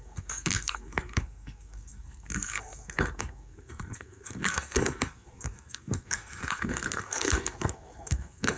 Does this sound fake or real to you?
fake